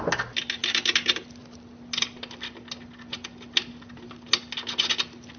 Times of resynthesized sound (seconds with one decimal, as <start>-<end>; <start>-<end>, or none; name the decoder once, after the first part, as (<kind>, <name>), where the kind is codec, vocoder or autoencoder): none